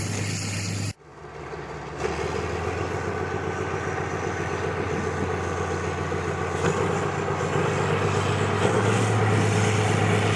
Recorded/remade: recorded